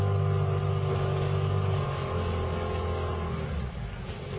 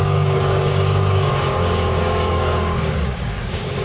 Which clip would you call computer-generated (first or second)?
second